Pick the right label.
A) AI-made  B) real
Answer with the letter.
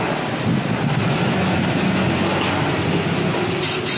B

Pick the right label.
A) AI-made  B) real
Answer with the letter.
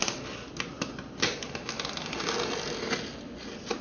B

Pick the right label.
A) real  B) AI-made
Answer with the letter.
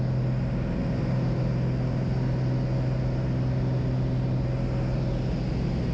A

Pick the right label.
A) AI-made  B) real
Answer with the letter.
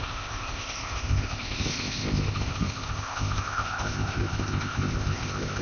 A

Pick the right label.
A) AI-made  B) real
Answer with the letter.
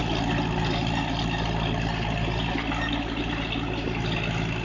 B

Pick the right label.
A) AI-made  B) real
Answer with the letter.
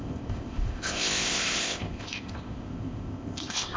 A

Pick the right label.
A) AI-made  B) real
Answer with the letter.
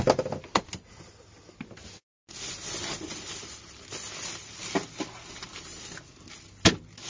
B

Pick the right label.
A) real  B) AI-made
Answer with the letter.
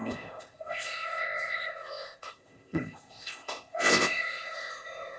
B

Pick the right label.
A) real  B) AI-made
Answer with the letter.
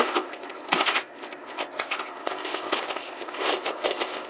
B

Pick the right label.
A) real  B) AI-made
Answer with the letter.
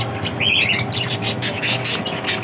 A